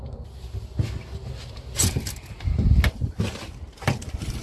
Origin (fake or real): real